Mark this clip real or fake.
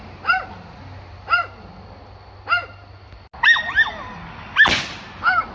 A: real